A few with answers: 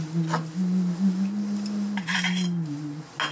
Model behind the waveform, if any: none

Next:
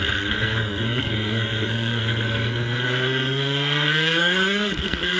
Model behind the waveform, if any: codec, SNAC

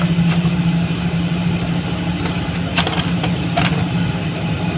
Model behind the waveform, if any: none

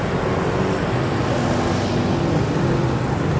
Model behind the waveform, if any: none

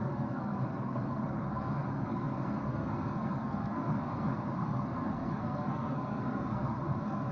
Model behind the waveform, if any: codec, SNAC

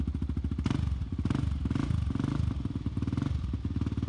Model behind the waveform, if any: none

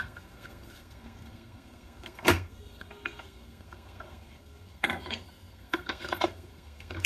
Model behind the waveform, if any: codec, SNAC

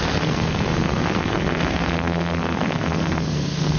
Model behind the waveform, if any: codec, SNAC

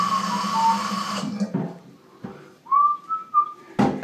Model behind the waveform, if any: none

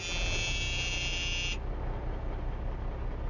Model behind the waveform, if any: none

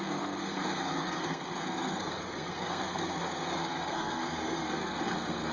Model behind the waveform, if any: codec, SNAC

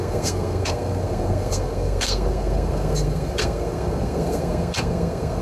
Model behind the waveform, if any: codec, SNAC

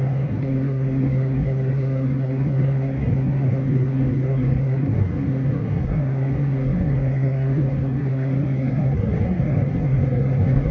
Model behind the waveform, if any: codec, SNAC